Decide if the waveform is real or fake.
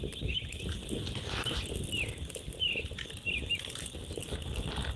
real